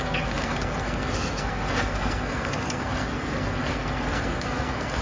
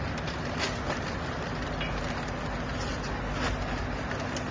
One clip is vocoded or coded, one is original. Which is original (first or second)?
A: second